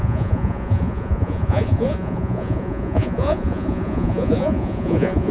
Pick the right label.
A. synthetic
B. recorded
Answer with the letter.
A